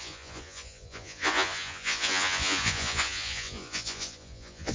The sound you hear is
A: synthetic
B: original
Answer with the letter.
A